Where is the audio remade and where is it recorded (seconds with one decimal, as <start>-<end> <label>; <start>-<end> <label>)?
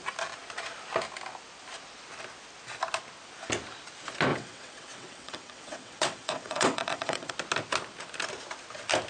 0.0-4.3 recorded; 4.3-7.3 remade; 7.3-9.1 recorded